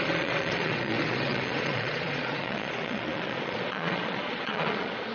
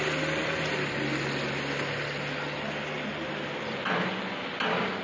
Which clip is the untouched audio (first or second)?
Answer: second